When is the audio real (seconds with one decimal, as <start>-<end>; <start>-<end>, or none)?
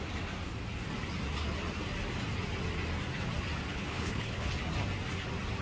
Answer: 0.0-3.7; 4.5-5.6